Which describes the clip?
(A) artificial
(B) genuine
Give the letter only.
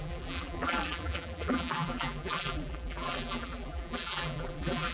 A